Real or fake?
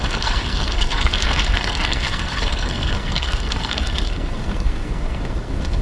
fake